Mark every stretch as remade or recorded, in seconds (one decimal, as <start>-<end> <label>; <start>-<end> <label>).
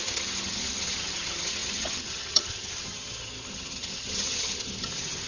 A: 0.0-5.3 remade